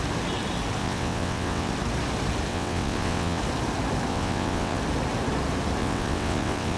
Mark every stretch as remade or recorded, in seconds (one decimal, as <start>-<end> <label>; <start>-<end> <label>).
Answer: 0.0-0.8 recorded; 0.8-1.7 remade; 1.7-2.5 recorded; 2.5-3.4 remade; 3.4-4.1 recorded; 4.1-4.8 remade; 4.8-5.8 recorded; 5.8-6.8 remade